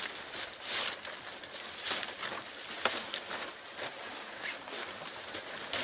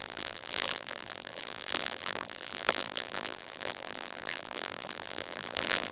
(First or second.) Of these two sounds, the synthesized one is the second